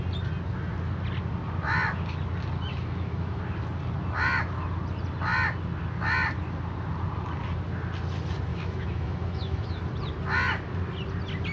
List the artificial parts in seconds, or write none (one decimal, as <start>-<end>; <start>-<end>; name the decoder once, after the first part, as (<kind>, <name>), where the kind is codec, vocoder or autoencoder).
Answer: 2.7-3.4 (autoencoder, DAC-VAE); 8.5-9.8